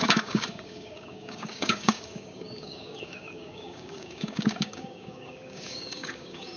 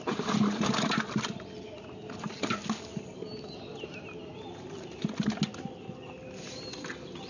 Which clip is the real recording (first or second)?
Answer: second